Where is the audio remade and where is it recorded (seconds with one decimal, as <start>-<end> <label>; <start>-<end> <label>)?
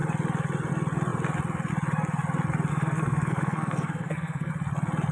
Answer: 0.0-2.7 recorded; 2.7-4.5 remade; 4.5-5.1 recorded